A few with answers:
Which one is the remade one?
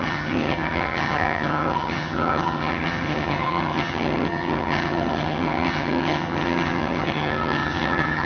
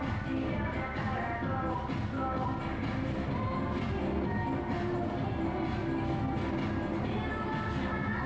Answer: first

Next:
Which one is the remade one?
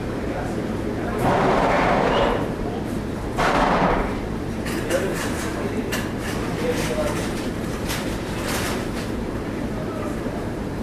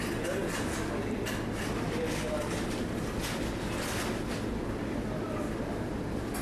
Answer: first